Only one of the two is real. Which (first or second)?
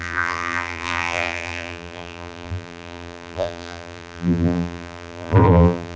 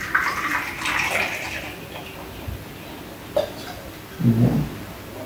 second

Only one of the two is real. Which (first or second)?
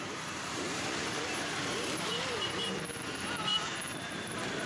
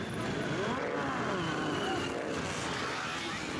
second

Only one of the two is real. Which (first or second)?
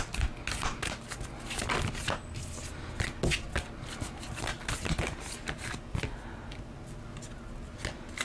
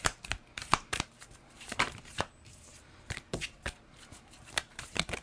first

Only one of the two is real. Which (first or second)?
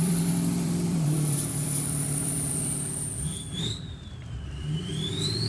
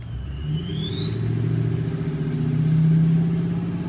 second